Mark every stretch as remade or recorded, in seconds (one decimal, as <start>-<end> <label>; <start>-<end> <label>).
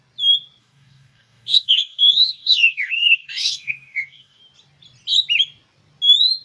0.0-0.6 recorded; 0.6-4.4 remade; 4.4-6.4 recorded